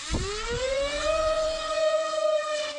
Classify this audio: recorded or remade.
remade